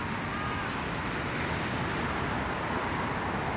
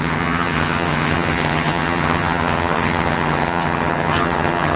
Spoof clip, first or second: second